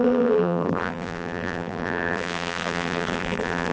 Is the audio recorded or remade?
remade